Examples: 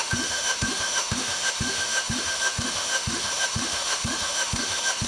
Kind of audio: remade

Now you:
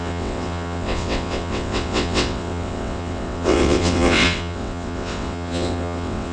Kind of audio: remade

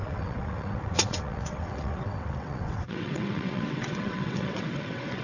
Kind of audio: remade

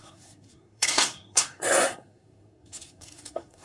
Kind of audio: remade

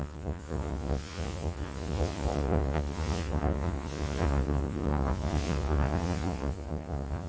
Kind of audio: remade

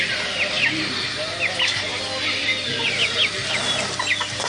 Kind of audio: recorded